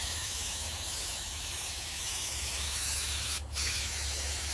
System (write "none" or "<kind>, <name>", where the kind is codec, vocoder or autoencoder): autoencoder, DAC-VAE